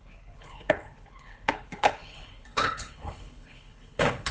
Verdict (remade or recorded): remade